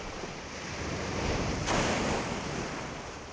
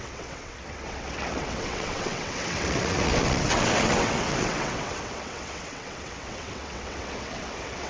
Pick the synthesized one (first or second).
second